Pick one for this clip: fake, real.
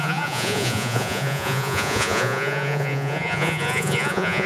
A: fake